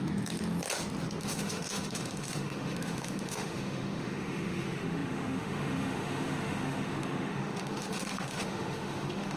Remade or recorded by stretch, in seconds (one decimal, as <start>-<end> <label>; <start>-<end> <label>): 0.0-1.2 recorded; 1.2-9.4 remade